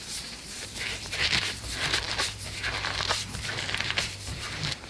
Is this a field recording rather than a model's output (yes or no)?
no